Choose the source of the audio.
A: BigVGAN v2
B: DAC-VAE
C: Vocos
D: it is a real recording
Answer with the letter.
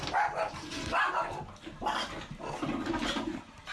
D